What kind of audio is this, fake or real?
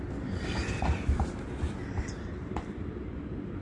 real